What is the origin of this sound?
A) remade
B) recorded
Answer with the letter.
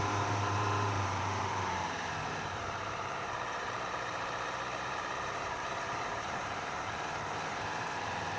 A